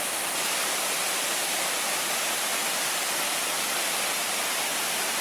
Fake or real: fake